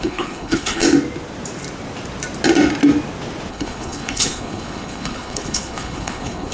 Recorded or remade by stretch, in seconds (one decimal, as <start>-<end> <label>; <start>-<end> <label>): 0.0-0.8 remade; 0.8-3.5 recorded; 3.5-6.5 remade